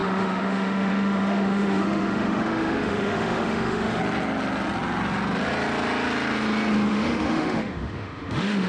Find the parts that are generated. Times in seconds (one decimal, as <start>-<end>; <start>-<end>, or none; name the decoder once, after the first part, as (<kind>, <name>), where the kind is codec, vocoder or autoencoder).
0.0-4.0 (autoencoder, DAC-VAE); 6.9-8.7